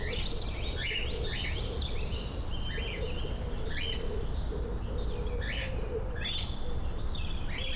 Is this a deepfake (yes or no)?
no